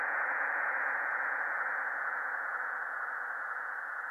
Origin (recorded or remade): remade